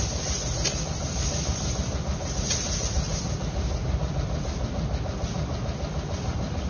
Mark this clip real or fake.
real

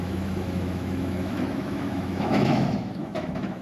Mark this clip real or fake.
fake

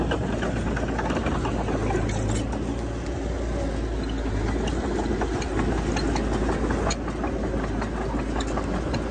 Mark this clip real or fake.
real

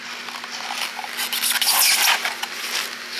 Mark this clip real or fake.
real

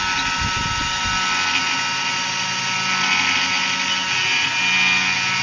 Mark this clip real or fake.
real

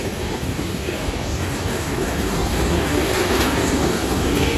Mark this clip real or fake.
fake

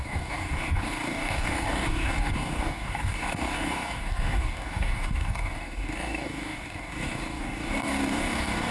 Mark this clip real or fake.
fake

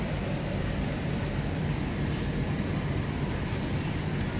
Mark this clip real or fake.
real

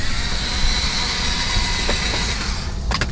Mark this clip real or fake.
real